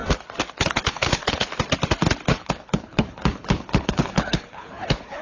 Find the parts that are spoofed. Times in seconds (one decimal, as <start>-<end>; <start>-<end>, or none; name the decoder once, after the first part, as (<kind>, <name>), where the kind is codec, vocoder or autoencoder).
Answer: 0.5-1.5 (codec, HILCodec); 2.3-5.2

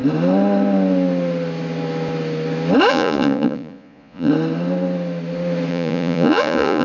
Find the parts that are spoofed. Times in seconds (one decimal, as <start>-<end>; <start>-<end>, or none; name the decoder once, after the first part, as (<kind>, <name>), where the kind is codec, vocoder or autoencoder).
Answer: 2.9-4.3 (vocoder, Vocos); 5.7-6.8

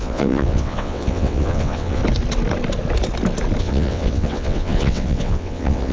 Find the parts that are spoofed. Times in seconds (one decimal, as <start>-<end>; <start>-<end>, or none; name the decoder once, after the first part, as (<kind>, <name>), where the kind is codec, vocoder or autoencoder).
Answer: 0.0-2.0 (vocoder, WaveNeXt); 3.6-5.9

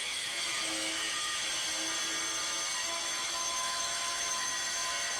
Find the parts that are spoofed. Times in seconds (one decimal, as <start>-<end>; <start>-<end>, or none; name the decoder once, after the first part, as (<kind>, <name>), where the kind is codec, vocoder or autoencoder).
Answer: 0.0-1.5 (autoencoder, DAC-VAE); 2.8-4.5

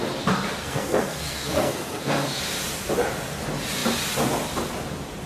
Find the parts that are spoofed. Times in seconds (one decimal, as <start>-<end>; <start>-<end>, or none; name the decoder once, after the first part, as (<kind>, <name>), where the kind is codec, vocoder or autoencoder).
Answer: 0.6-2.4 (codec, SNAC)